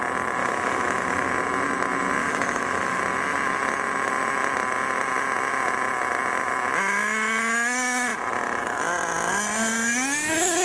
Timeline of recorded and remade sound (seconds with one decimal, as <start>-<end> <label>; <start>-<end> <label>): 0.0-0.4 recorded; 0.4-1.3 remade; 1.3-2.2 recorded; 2.2-3.0 remade; 3.0-10.6 recorded

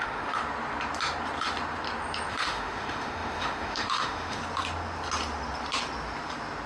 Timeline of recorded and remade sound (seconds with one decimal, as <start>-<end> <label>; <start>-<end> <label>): 0.0-0.4 remade; 0.4-2.3 recorded; 2.3-4.4 remade; 4.4-6.7 recorded

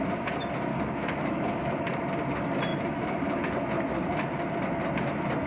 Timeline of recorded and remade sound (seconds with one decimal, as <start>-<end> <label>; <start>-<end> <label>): 0.0-0.7 recorded; 0.7-2.0 remade; 2.0-2.7 recorded; 2.7-3.7 remade; 3.7-5.5 recorded

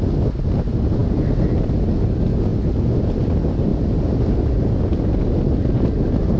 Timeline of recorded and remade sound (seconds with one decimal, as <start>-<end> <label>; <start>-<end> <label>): 0.0-6.4 recorded

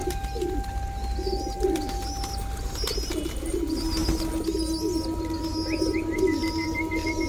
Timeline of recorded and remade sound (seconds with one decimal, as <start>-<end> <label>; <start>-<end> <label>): 0.0-7.3 recorded

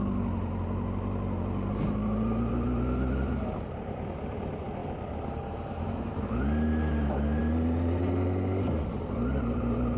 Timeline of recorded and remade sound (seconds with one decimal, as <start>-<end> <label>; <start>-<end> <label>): 0.0-10.0 recorded

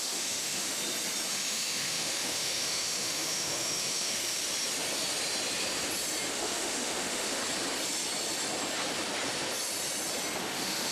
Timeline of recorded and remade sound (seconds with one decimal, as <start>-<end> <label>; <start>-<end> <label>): 0.0-0.8 remade; 0.8-1.3 recorded; 1.3-4.4 remade; 4.4-6.3 recorded; 6.3-7.4 remade; 7.4-10.4 recorded; 10.4-10.9 remade